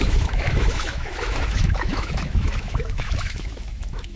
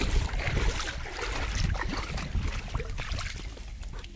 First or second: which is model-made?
first